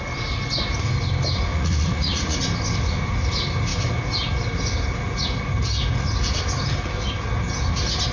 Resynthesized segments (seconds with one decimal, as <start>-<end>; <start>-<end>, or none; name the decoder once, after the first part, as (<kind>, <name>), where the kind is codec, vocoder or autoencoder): 1.5-2.4 (vocoder, Vocos)